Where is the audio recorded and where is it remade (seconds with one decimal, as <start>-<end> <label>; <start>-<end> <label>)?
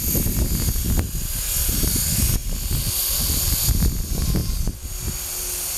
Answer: 0.0-5.8 recorded